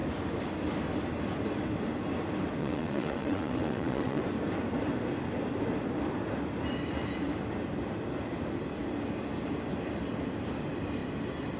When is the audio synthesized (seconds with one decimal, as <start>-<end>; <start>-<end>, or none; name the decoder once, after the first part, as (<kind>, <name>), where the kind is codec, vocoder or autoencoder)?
2.6-4.2 (vocoder, WaveNeXt)